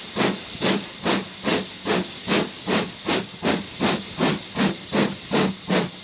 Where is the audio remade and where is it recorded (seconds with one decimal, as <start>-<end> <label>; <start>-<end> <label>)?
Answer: 0.0-6.0 recorded